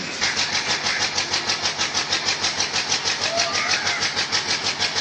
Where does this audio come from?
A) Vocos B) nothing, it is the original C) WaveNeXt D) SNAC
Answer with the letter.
B